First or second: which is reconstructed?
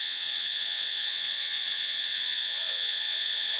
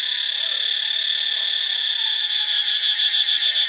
first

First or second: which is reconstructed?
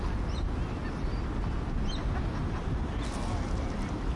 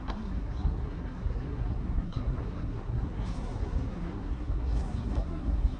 second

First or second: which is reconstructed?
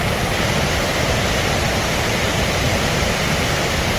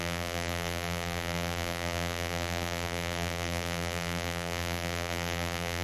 second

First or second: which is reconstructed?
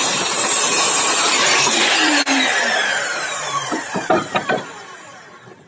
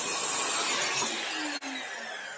first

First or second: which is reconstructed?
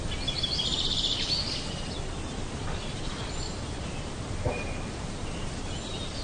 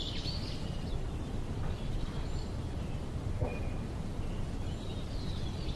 second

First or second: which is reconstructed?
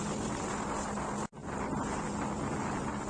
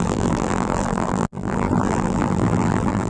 second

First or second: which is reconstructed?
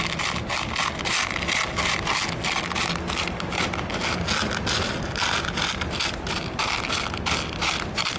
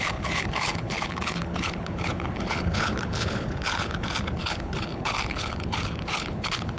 second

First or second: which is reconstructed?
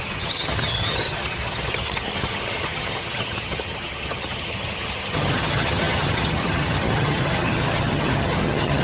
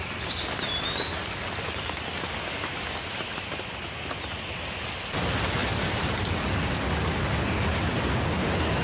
first